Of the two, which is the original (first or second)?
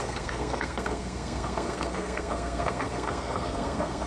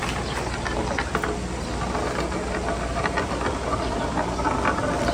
second